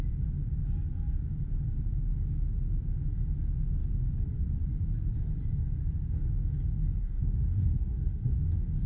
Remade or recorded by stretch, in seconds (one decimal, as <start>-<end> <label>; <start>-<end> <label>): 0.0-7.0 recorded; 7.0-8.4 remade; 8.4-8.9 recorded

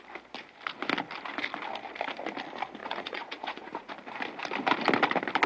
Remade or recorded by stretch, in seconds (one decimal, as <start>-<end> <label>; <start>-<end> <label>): 0.0-2.8 recorded; 2.8-3.9 remade; 3.9-5.5 recorded

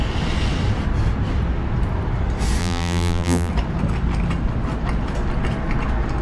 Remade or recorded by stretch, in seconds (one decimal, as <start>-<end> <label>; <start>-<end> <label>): 0.0-2.6 recorded; 2.6-3.5 remade; 3.5-6.2 recorded

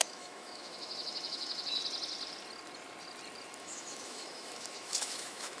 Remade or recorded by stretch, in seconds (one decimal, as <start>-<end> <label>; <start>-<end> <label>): 0.0-1.8 remade; 1.8-3.6 recorded; 3.6-5.6 remade

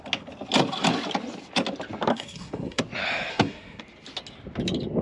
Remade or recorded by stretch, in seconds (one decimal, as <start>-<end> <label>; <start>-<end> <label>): 0.0-2.1 recorded; 2.1-2.8 remade; 2.8-3.3 recorded; 3.3-3.8 remade; 3.8-5.0 recorded